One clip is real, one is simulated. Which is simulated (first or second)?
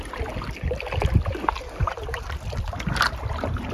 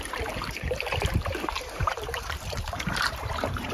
second